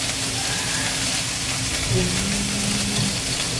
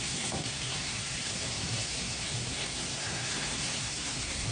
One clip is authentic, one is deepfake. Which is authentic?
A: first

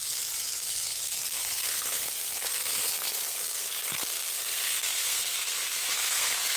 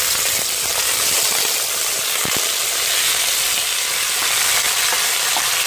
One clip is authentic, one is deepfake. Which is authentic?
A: second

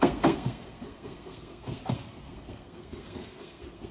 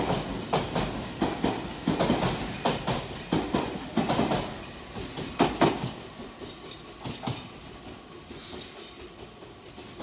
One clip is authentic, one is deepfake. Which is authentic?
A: second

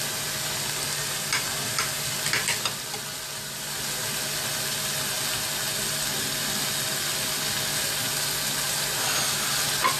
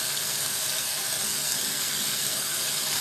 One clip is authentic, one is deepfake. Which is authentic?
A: first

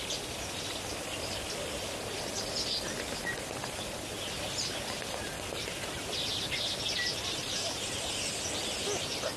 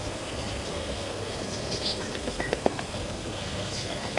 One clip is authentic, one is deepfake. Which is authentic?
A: first